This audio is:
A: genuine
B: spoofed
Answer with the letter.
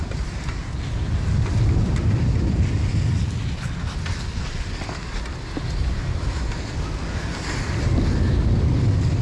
A